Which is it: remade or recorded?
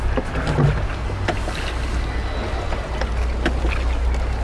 recorded